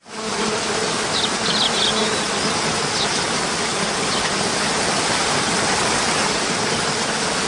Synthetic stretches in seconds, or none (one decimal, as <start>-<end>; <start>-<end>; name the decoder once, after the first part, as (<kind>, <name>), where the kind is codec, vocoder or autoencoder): 3.7-7.1 (vocoder, BigVGAN v2)